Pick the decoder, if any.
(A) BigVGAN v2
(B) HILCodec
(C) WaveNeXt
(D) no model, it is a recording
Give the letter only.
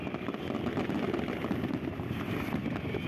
A